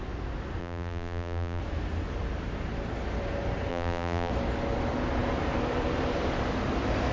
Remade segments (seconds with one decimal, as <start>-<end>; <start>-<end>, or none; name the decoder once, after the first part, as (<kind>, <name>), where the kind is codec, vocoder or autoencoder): 0.6-1.6 (vocoder, BigVGAN v2); 3.7-4.3